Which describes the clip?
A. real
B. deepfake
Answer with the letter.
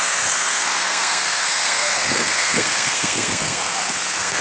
B